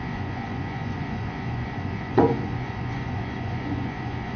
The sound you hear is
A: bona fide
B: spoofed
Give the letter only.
B